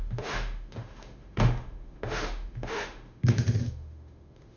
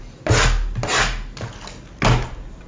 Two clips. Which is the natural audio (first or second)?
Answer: second